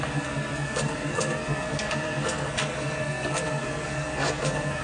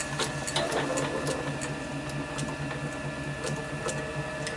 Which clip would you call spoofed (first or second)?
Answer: first